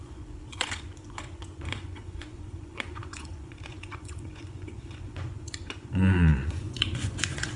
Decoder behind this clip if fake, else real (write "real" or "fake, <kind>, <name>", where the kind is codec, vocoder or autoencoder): fake, vocoder, Vocos